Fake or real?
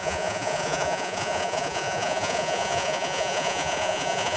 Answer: fake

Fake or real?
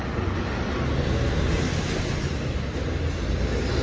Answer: real